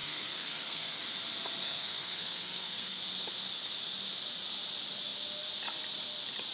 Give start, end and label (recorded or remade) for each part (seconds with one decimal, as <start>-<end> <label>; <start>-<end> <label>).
0.0-1.0 remade; 1.0-1.6 recorded; 1.6-3.0 remade; 3.0-6.5 recorded